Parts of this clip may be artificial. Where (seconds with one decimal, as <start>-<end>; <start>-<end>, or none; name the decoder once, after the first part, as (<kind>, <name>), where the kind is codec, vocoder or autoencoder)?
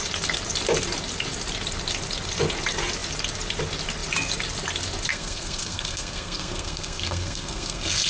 5.1-8.1 (codec, SNAC)